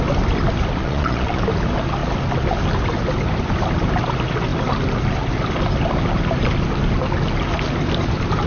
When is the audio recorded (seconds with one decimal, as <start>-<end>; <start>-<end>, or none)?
0.0-0.8; 1.4-8.5